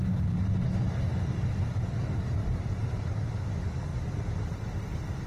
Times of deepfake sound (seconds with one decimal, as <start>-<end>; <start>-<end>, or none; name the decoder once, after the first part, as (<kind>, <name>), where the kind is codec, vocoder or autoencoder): 3.9-4.8 (vocoder, BigVGAN v2)

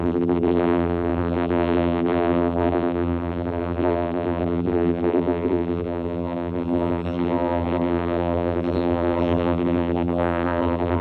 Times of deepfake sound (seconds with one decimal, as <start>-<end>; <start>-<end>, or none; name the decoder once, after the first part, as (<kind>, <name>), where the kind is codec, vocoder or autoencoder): 0.0-11.0 (vocoder, BigVGAN v2)

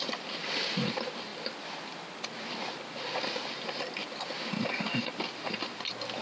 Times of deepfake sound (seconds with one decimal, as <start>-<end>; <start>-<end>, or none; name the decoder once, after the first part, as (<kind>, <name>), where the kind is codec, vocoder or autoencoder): none

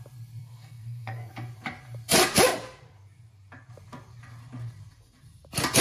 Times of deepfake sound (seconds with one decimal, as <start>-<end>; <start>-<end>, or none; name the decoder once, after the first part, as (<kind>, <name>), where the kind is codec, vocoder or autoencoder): 0.4-1.3 (codec, SNAC)

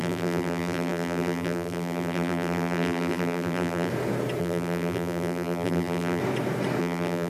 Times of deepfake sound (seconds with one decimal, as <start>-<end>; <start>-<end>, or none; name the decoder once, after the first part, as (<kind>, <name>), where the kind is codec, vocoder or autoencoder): 0.0-3.9 (vocoder, BigVGAN v2); 4.4-6.2; 6.8-7.3